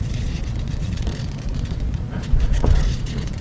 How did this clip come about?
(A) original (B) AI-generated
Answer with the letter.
B